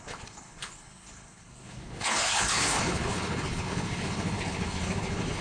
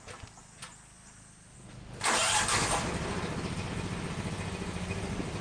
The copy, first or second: first